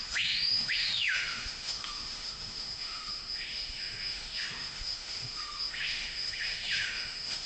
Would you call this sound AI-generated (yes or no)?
yes